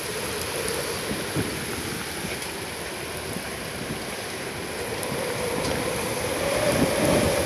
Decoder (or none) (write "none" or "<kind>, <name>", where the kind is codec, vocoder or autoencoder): vocoder, BigVGAN v2